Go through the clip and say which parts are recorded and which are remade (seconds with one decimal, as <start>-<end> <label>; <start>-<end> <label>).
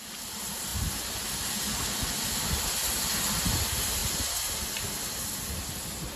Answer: 0.0-6.2 recorded